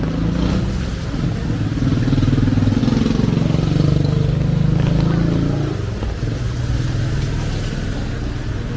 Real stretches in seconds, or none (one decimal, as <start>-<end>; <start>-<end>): 0.0-8.8

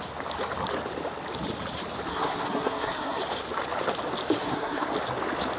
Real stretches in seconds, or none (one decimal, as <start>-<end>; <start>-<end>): 0.0-2.1; 3.2-4.4; 4.9-5.6

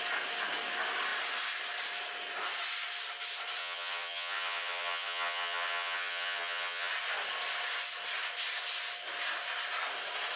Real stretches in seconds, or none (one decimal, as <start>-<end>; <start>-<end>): 0.0-3.6; 6.9-10.4

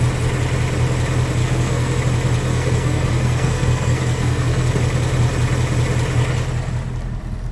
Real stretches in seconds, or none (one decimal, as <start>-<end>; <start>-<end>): 0.0-1.4; 2.0-2.5; 4.7-7.5

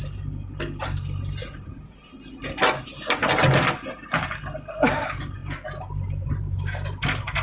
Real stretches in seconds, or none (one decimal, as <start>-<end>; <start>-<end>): 0.0-7.4

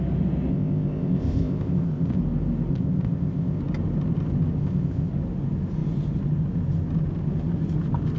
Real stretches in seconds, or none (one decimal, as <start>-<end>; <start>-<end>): 0.0-0.5; 2.2-2.7; 3.6-4.6; 5.1-8.2

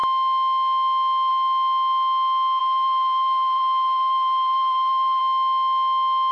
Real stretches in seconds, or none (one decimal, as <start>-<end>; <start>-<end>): 0.0-2.6; 5.2-6.3

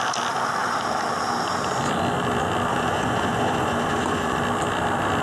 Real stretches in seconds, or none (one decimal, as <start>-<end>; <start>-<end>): 0.0-2.7; 4.4-5.2